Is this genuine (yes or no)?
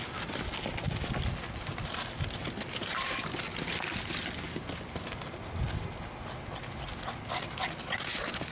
yes